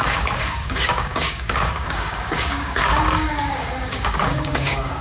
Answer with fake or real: fake